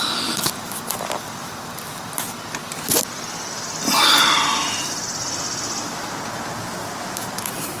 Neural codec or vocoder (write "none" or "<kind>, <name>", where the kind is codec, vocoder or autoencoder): none